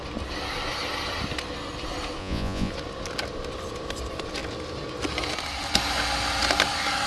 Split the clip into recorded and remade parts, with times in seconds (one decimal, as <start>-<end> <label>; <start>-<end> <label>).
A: 0.0-2.2 recorded; 2.2-2.7 remade; 2.7-7.1 recorded